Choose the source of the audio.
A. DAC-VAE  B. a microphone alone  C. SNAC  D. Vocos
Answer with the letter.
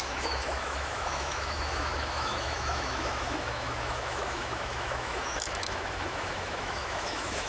A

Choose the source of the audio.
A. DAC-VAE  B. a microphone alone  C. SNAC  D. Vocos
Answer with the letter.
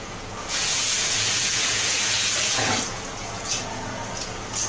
D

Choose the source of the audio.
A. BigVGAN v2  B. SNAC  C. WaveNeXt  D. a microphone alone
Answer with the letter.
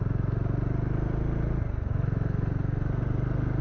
D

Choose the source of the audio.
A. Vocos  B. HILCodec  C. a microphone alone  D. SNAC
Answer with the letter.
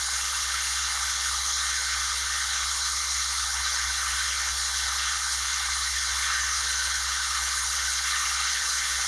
B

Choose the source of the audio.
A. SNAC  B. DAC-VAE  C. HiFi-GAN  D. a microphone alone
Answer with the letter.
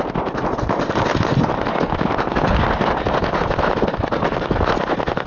D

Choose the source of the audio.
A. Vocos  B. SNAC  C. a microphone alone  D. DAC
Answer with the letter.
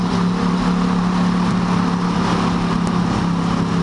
C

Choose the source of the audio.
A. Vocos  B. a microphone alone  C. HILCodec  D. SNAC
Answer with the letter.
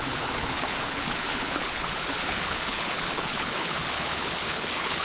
C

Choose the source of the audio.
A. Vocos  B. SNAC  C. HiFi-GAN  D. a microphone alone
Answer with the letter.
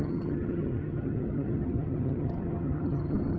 C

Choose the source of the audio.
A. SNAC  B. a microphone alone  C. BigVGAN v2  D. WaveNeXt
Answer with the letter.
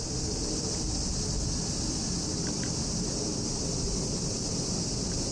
B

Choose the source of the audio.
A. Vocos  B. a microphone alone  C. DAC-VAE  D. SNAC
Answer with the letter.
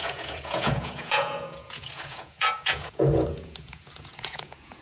A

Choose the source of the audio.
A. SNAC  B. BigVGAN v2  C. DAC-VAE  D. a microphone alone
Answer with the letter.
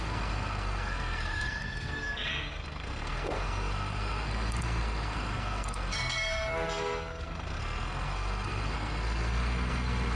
A